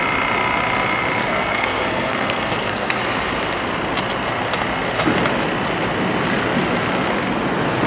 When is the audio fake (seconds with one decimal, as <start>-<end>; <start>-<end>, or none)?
1.2-3.0